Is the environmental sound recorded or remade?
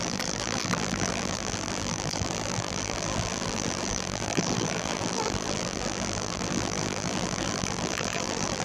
remade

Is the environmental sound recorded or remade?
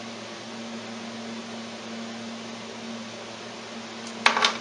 recorded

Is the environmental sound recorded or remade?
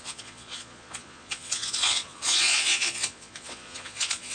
remade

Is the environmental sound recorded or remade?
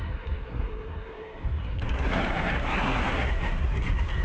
remade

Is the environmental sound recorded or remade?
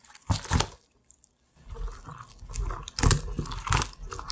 recorded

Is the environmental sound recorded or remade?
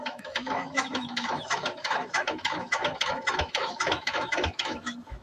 remade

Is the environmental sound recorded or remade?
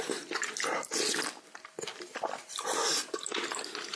recorded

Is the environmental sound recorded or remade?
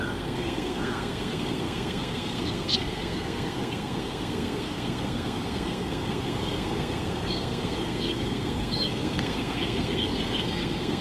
remade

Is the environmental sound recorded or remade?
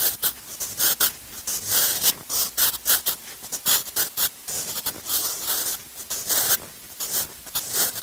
remade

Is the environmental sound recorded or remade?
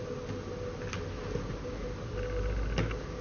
recorded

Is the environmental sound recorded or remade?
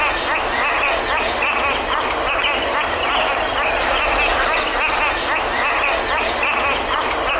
recorded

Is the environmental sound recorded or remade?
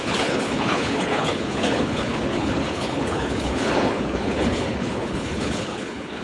remade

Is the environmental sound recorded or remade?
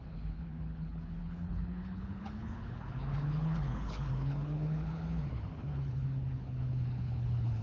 remade